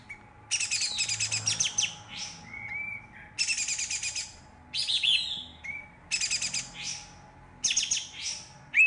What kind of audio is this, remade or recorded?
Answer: recorded